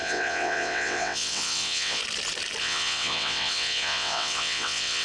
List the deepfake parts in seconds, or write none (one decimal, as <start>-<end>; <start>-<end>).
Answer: 0.0-2.0; 2.6-5.0